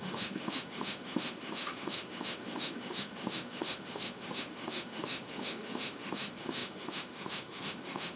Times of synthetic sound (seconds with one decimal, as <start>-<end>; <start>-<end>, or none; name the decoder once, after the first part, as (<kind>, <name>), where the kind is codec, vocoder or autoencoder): 0.0-8.2 (autoencoder, DAC-VAE)